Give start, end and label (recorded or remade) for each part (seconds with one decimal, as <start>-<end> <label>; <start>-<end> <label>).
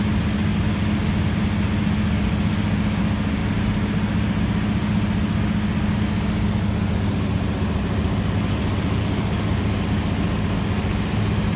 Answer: 0.0-11.6 recorded